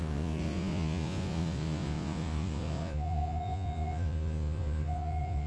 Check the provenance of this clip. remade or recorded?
remade